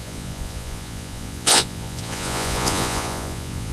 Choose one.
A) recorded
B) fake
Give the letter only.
B